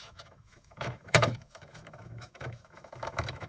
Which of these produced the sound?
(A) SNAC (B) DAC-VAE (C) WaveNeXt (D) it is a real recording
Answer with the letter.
B